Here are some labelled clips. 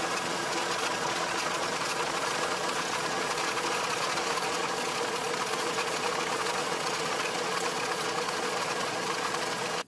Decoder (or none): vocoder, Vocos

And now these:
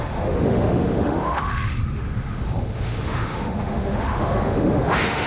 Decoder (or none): autoencoder, DAC-VAE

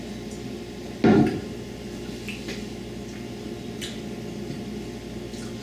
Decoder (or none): none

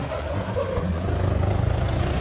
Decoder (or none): vocoder, Vocos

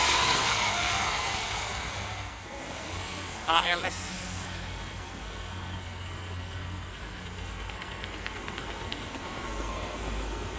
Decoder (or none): codec, SNAC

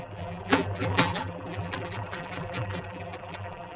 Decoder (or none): vocoder, BigVGAN v2